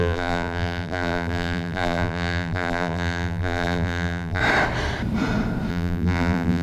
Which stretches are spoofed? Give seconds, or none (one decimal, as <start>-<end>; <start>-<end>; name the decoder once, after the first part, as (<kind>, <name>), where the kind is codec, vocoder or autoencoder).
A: 0.0-4.4 (vocoder, BigVGAN v2); 5.7-6.6